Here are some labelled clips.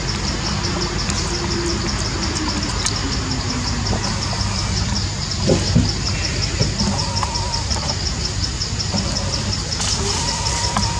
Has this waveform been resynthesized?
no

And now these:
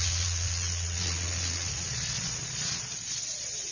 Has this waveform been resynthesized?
yes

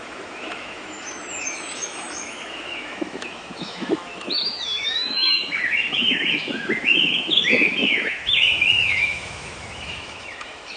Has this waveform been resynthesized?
yes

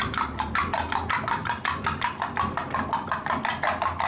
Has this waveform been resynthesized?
no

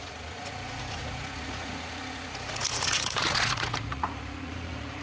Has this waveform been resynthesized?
yes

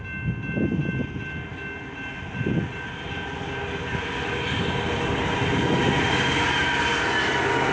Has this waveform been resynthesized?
no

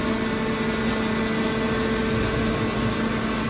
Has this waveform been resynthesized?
no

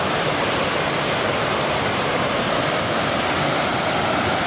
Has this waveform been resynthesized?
no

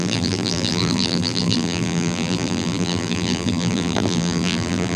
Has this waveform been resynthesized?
yes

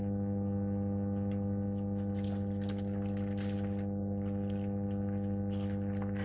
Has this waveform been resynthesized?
no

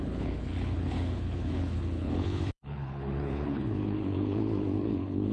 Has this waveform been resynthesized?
yes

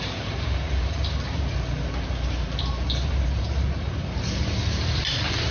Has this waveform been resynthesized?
yes